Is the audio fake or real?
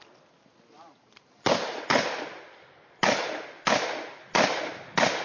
real